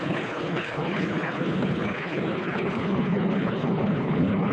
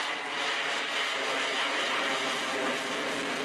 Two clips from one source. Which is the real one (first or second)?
second